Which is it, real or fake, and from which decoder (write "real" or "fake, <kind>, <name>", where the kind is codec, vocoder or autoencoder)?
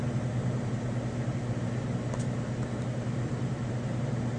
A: real